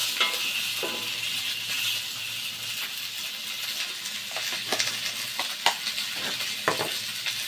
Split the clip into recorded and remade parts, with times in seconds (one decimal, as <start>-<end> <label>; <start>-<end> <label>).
0.0-7.5 recorded